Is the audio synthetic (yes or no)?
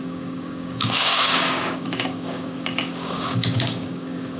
yes